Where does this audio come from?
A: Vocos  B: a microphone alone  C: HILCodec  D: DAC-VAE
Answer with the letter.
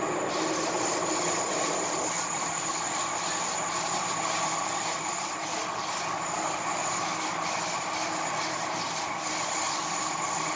B